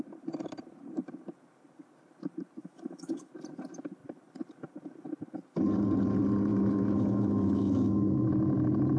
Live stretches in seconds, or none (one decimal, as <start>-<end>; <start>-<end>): 0.0-2.6; 3.3-6.5; 8.3-9.0